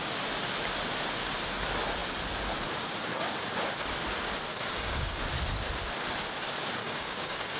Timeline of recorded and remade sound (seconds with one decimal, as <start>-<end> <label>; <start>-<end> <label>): 0.0-4.5 recorded; 4.5-5.2 remade; 5.2-6.8 recorded; 6.8-7.6 remade